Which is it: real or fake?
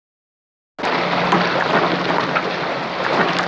real